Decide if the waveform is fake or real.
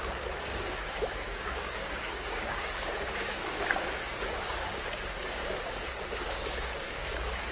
fake